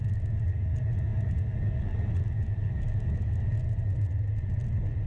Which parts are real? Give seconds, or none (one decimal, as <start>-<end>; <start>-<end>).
0.0-5.1